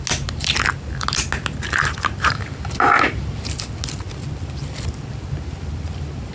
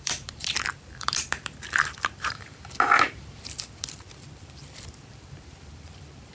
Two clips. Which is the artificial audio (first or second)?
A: second